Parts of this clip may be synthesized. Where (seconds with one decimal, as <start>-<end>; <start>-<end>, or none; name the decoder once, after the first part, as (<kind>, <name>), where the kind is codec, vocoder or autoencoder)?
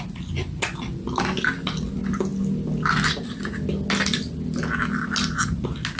none